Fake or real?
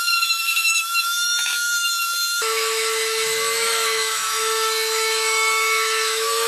fake